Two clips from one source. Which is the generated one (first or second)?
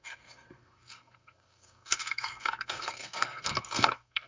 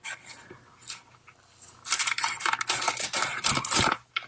first